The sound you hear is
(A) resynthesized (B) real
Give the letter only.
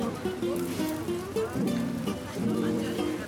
A